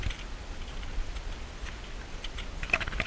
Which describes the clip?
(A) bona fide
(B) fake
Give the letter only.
A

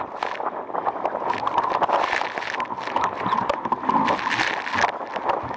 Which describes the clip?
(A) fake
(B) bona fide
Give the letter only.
B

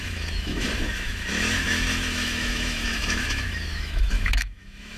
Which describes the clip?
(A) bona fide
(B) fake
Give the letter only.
B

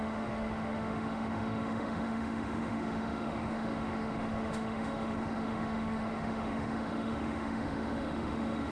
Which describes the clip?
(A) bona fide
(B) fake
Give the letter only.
B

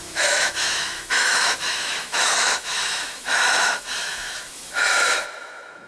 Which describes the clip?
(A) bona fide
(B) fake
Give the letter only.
B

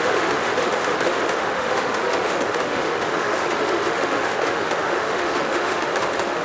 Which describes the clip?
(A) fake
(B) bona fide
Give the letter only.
A